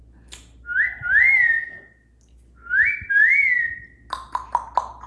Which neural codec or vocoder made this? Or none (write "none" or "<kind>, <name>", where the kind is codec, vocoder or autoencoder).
none